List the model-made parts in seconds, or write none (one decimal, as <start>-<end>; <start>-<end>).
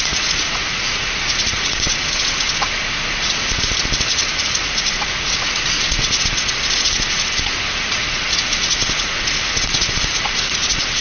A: 0.0-3.7; 4.6-11.0